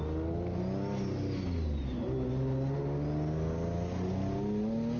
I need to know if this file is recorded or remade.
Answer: recorded